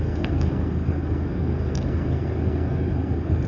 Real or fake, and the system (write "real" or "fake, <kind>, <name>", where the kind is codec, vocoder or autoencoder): fake, codec, SNAC